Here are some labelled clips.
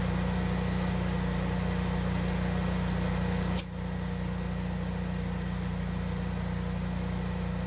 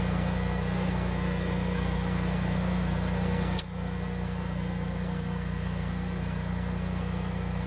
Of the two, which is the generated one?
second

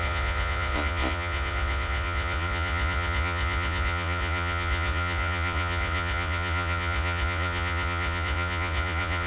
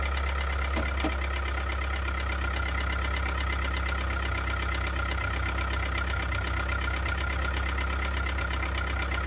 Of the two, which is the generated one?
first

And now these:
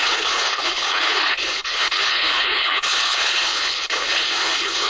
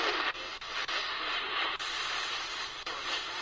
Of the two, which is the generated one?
first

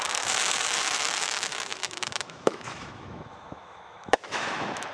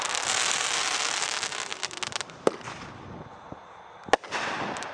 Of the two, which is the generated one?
first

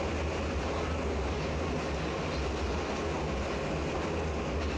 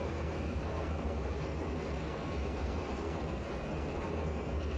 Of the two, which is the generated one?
second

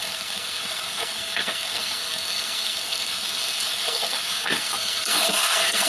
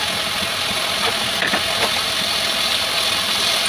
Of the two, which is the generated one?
first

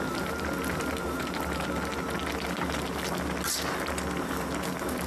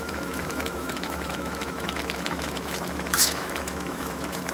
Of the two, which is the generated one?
second